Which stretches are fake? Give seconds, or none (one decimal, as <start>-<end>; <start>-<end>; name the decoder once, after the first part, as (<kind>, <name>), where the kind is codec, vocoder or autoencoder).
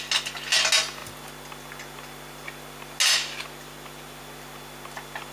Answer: none